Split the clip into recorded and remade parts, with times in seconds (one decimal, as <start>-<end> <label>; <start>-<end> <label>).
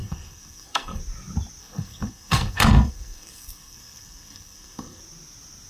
0.0-1.0 remade; 1.0-1.6 recorded; 1.6-5.0 remade; 5.0-5.7 recorded